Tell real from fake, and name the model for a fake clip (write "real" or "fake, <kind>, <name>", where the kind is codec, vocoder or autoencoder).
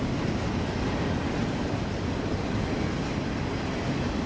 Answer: real